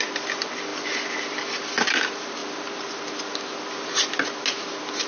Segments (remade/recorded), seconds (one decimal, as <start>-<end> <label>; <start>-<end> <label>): 0.0-5.1 recorded